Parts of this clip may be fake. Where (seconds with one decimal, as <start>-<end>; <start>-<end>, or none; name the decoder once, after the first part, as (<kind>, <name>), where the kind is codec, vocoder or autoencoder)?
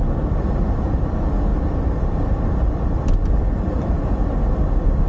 none